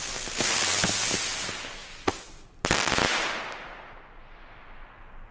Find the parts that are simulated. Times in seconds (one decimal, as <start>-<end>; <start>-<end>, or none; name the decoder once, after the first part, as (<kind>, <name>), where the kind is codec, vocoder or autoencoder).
1.8-2.9 (vocoder, BigVGAN v2)